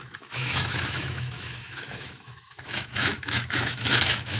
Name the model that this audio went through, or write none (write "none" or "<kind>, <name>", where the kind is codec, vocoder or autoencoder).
autoencoder, DAC-VAE